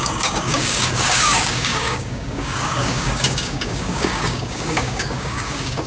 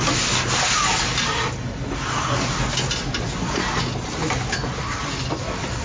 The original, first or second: second